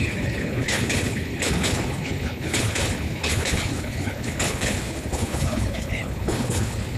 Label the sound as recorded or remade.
remade